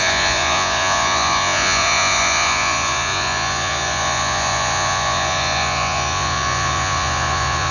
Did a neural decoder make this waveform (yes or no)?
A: yes